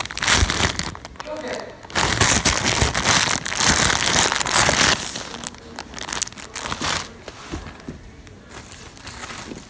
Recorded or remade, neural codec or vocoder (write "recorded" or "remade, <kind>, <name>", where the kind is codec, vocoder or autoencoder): recorded